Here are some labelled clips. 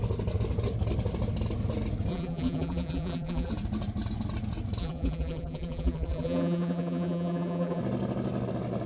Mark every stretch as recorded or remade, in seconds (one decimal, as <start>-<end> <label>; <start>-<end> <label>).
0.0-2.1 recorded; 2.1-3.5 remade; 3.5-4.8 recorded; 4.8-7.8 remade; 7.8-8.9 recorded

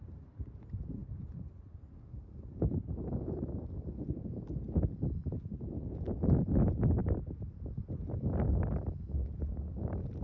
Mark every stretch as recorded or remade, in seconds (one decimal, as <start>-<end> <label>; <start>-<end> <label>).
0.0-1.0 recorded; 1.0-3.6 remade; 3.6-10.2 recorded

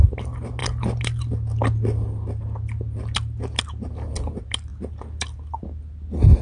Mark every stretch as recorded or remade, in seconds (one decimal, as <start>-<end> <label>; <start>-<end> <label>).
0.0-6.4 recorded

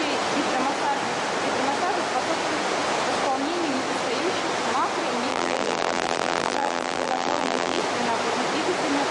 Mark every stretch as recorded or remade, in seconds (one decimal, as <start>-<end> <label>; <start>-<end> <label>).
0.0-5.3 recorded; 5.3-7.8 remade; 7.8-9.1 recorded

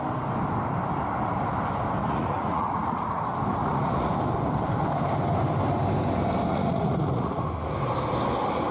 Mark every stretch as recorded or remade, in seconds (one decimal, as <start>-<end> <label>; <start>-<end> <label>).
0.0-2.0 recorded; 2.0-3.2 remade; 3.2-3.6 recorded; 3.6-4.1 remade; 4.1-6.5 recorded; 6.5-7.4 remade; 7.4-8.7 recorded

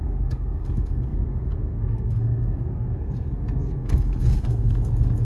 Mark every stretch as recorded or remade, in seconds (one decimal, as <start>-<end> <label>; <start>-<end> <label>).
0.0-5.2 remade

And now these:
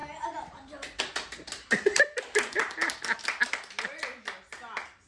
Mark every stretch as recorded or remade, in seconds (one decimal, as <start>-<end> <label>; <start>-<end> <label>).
0.0-5.1 recorded

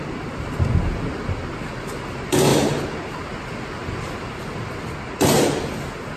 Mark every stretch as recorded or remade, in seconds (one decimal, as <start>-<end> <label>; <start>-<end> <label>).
0.0-6.2 recorded